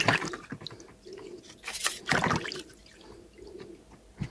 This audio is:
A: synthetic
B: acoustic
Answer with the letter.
B